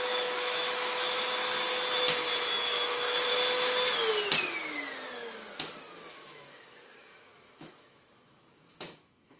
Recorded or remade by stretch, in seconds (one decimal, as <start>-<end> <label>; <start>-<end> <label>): 0.0-1.4 remade; 1.4-2.5 recorded; 2.5-3.3 remade; 3.3-6.1 recorded; 6.1-9.4 remade